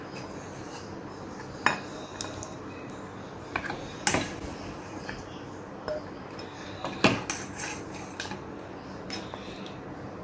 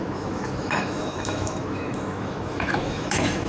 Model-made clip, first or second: second